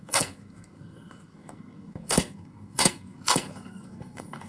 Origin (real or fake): fake